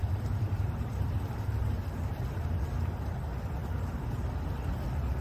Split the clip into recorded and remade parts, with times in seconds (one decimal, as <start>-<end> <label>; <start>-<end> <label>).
0.0-3.1 remade; 3.1-3.6 recorded; 3.6-4.2 remade; 4.2-5.2 recorded